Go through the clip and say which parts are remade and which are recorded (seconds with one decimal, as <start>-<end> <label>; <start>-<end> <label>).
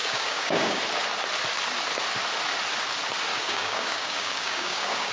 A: 0.0-0.8 remade; 0.8-3.3 recorded; 3.3-5.1 remade